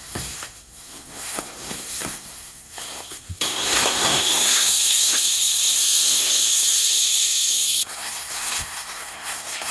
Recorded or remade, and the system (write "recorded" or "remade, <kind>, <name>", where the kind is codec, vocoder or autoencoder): remade, codec, SNAC